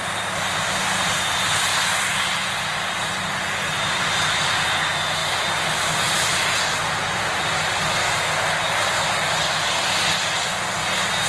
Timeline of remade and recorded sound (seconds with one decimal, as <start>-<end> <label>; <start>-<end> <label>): 0.0-11.3 recorded